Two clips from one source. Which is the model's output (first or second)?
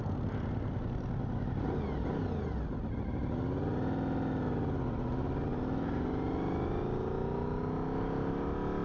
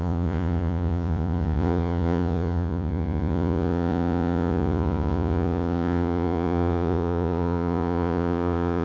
second